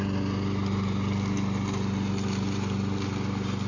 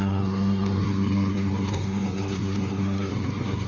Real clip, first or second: first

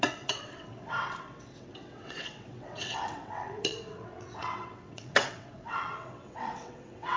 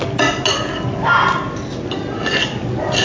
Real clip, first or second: second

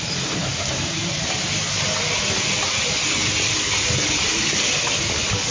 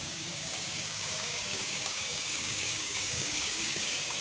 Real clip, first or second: first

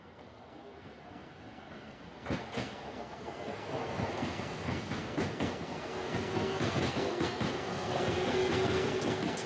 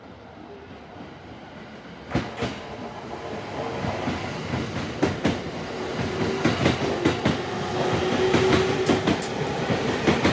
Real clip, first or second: second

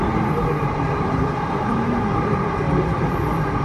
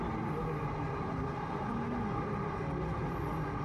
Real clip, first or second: second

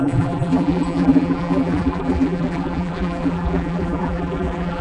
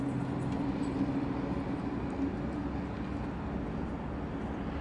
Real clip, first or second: second